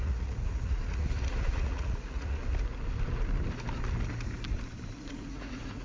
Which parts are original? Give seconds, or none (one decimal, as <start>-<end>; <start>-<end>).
2.4-5.0